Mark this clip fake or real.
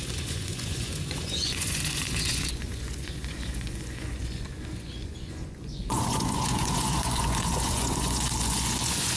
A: fake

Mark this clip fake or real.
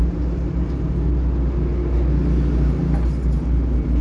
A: real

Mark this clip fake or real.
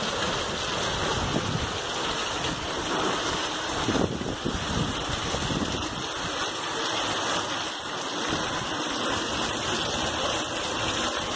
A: real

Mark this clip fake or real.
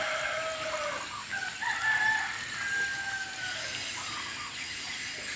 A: real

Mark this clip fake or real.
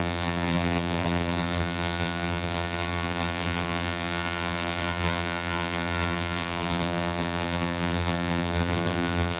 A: fake